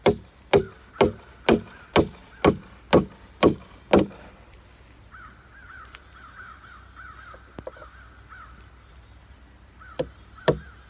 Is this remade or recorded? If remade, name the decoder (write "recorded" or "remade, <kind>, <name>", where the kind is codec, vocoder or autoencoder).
recorded